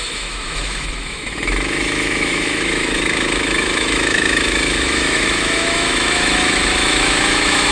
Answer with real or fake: fake